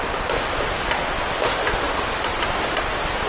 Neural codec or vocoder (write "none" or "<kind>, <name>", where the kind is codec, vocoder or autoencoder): none